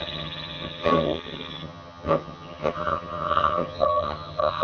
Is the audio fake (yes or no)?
yes